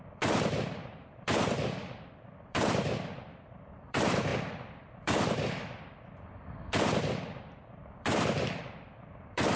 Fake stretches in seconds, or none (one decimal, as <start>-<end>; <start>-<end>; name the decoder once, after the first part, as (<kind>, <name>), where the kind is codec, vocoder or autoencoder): 0.0-9.6 (vocoder, BigVGAN v2)